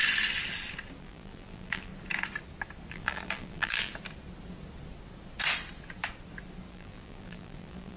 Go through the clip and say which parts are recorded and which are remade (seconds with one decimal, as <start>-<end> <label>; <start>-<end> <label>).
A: 0.0-1.0 recorded; 1.0-1.9 remade; 1.9-2.9 recorded; 2.9-3.9 remade; 3.9-6.7 recorded; 6.7-8.0 remade